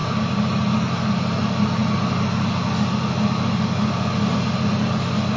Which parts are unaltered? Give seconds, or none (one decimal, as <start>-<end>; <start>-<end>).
0.0-5.4